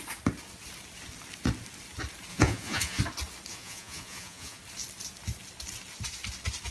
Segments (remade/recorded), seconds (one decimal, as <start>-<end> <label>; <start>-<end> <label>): 0.0-2.3 recorded; 2.3-3.0 remade; 3.0-3.5 recorded; 3.5-4.6 remade; 4.6-6.7 recorded